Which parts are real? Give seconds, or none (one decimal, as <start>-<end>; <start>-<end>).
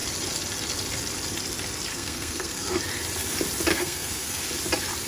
0.0-1.9; 2.8-3.7; 4.4-5.1